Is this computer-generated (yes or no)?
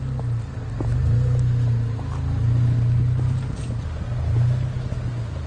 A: no